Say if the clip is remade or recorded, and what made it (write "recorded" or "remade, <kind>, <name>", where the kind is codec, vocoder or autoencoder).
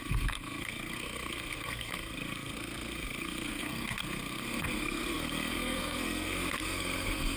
remade, codec, SNAC